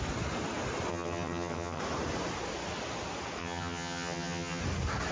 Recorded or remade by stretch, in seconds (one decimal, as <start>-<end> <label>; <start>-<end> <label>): 0.0-0.9 recorded; 0.9-1.8 remade; 1.8-3.4 recorded; 3.4-4.6 remade; 4.6-5.1 recorded